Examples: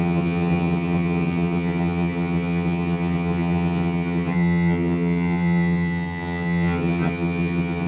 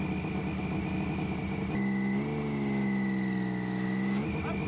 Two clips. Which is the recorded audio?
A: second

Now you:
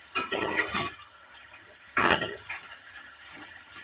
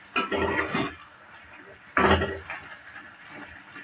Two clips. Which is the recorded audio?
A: second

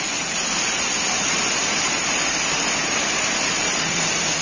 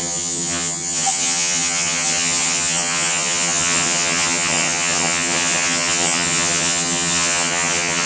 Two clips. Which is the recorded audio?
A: first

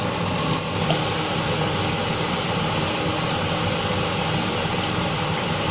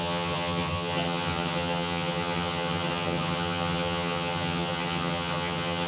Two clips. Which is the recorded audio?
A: first